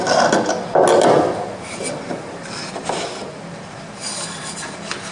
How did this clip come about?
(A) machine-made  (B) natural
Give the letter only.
B